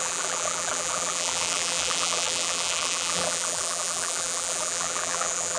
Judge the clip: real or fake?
fake